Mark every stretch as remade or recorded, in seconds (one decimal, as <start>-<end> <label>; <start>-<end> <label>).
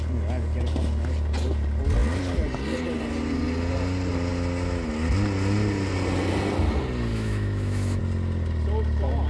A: 0.0-7.1 recorded; 7.1-8.0 remade; 8.0-9.3 recorded